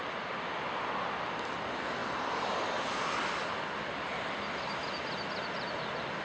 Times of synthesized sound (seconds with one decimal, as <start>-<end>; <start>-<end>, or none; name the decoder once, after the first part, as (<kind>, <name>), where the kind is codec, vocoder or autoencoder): none